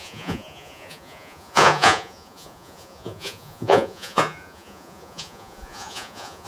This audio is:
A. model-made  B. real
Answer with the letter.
A